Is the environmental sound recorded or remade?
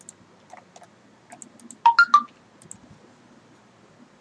recorded